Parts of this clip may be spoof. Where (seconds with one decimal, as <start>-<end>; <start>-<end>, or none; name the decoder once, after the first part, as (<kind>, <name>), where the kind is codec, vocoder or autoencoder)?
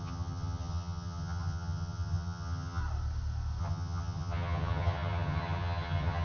0.0-2.8 (vocoder, HiFi-GAN); 3.6-6.2